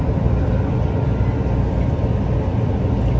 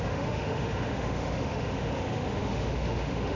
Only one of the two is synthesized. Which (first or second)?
second